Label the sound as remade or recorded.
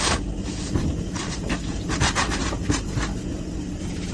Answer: remade